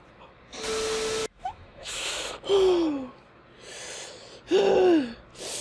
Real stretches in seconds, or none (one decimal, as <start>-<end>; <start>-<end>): 0.0-1.2; 2.3-5.6